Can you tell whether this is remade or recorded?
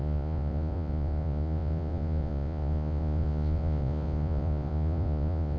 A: remade